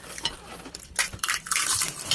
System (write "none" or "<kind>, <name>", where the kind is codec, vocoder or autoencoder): vocoder, BigVGAN v2